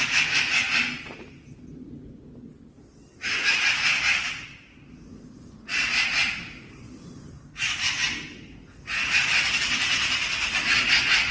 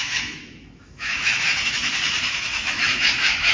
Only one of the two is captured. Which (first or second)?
first